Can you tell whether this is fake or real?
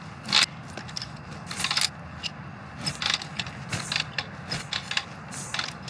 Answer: real